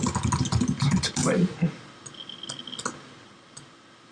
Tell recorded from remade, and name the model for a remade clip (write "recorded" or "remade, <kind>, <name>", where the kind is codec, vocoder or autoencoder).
recorded